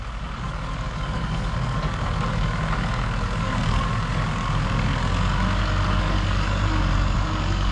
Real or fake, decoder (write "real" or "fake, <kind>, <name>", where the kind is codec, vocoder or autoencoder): fake, codec, DAC